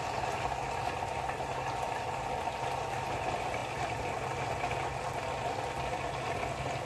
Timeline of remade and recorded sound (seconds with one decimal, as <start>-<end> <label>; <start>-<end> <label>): 0.0-6.8 recorded

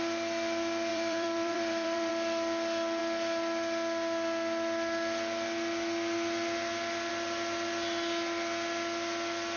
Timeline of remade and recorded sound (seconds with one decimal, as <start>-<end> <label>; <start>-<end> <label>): 0.0-0.9 recorded; 0.9-2.1 remade; 2.1-9.6 recorded